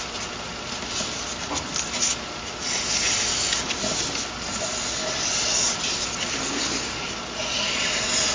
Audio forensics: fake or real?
real